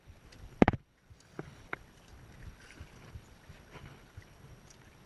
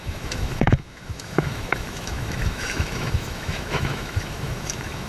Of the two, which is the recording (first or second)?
first